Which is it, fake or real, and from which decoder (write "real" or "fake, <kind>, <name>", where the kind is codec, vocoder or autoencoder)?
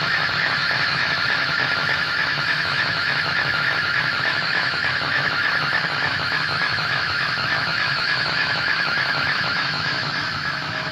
fake, autoencoder, DAC-VAE